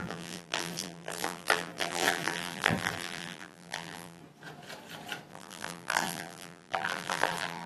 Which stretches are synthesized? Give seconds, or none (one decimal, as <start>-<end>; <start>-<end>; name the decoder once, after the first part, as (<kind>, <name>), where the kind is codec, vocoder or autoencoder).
0.0-4.2 (vocoder, BigVGAN v2); 5.3-7.7